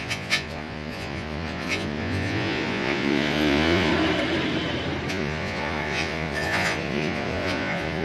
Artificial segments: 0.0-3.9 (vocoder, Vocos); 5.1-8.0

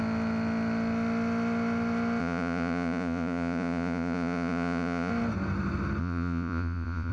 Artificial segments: 2.2-5.1 (vocoder, Vocos); 6.0-7.1

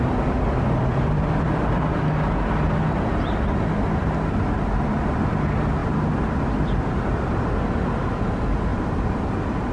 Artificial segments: none

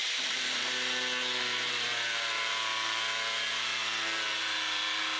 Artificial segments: 1.7-5.2 (vocoder, BigVGAN v2)

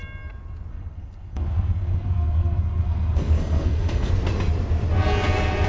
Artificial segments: 0.7-4.1 (codec, SNAC)

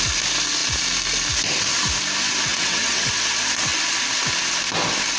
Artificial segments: 2.5-3.2 (vocoder, WaveNeXt)

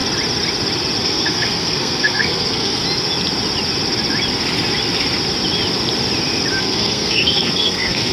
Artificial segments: 1.0-2.8 (codec, SNAC); 6.6-8.1

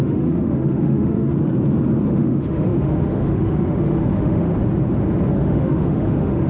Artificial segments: 0.0-1.3 (autoencoder, DAC-VAE); 2.1-4.5; 5.3-6.5